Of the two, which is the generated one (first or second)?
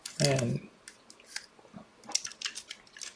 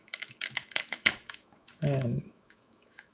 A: second